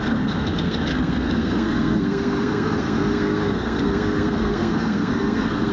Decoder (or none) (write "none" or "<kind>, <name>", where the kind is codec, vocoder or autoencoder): codec, SNAC